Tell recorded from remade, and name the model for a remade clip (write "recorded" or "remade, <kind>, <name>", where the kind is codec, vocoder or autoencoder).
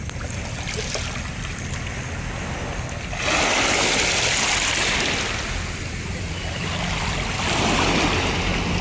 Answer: recorded